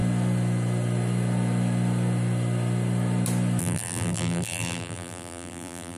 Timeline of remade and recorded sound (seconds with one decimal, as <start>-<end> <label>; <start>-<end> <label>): 0.0-3.6 recorded; 3.6-6.0 remade